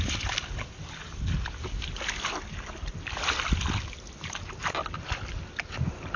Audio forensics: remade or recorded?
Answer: recorded